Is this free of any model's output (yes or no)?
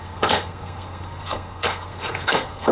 no